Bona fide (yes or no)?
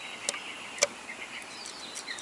yes